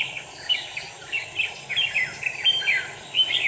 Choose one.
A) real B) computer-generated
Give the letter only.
A